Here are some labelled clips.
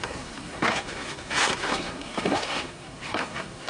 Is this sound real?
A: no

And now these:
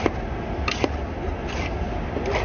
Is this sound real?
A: yes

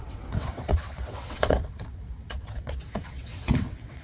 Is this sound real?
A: no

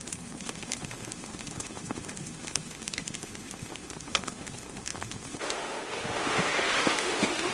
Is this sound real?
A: no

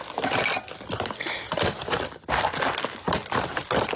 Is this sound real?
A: yes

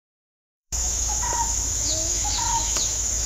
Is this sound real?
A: no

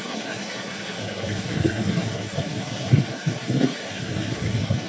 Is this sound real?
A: no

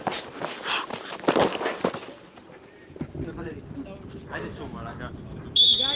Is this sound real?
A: yes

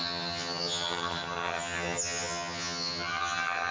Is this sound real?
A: no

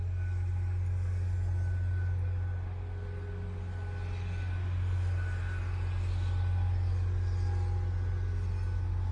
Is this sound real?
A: yes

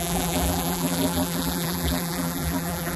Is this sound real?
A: no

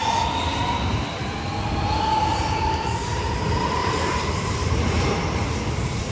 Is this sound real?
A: yes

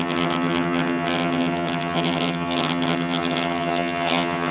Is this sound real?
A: no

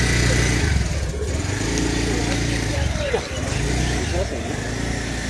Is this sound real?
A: yes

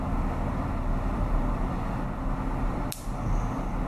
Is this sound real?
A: yes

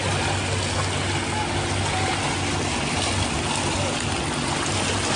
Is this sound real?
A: yes